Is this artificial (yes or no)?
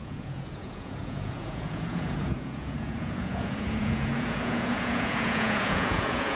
yes